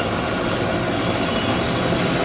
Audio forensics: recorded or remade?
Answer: recorded